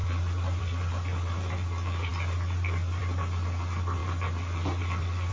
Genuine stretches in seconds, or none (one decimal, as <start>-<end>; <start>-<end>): 0.0-5.3